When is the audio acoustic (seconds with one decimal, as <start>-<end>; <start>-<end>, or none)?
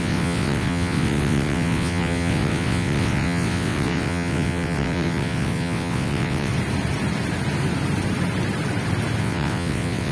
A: 6.5-9.2